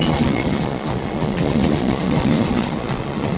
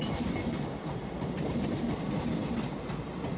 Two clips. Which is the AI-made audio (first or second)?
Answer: first